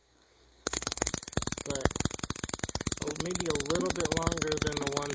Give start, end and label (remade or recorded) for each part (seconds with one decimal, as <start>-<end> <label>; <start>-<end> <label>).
0.0-1.1 remade; 1.1-5.1 recorded